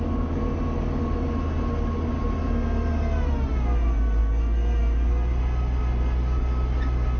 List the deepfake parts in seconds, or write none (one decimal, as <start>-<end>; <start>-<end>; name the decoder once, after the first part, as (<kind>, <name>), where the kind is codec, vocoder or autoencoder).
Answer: none